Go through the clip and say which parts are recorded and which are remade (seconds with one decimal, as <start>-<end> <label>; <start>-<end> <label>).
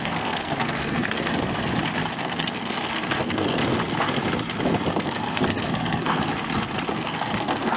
0.0-1.3 remade; 1.3-2.2 recorded; 2.2-3.6 remade; 3.6-4.9 recorded; 4.9-6.3 remade; 6.3-6.9 recorded; 6.9-7.8 remade